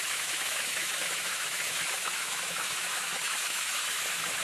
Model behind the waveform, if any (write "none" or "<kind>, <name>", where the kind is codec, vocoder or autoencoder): autoencoder, DAC-VAE